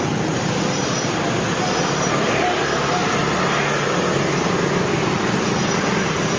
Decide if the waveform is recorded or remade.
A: recorded